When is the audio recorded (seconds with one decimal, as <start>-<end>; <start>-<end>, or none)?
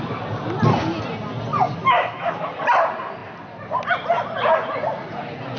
0.0-1.8; 2.5-5.6